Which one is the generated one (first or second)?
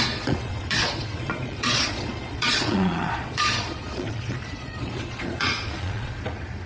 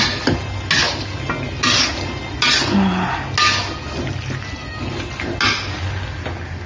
first